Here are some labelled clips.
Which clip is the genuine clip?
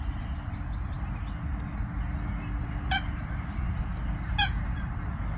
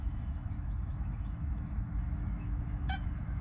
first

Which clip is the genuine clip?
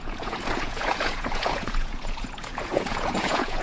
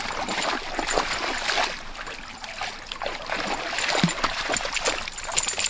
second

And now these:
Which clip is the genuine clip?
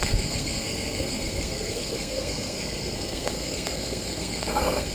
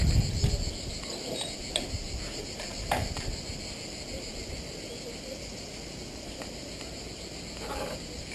second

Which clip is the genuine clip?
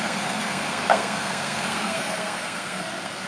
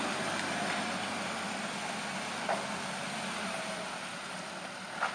second